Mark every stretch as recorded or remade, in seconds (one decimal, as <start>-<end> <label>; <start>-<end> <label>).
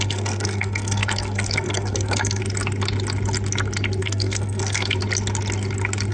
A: 0.0-2.4 remade; 2.4-4.0 recorded; 4.0-5.0 remade; 5.0-6.1 recorded